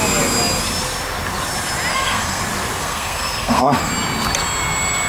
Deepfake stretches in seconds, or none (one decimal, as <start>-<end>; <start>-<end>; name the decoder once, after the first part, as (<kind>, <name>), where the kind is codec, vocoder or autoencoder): 1.9-2.4 (codec, SNAC); 2.8-3.9